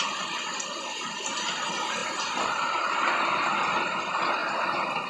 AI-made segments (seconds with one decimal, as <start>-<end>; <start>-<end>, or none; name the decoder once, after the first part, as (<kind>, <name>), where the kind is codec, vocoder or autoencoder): none